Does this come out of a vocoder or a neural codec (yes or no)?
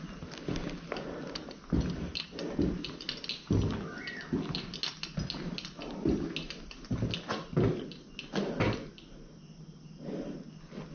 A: no